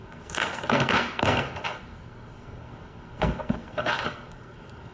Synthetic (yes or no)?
yes